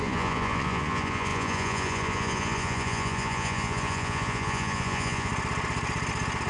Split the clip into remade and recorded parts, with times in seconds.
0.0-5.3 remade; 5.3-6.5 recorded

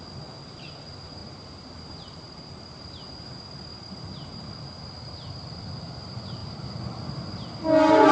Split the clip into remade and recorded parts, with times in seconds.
0.0-1.2 recorded; 1.2-2.8 remade; 2.8-3.7 recorded; 3.7-4.5 remade; 4.5-8.1 recorded

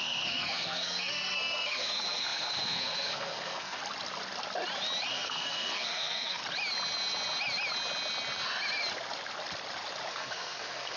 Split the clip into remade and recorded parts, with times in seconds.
0.0-3.8 remade; 3.8-5.1 recorded; 5.1-6.4 remade; 6.4-10.1 recorded; 10.1-11.0 remade